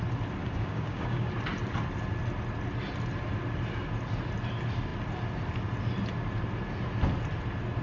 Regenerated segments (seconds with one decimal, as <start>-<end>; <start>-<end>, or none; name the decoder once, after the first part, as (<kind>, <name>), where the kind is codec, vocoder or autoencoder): 0.4-1.3 (codec, DAC)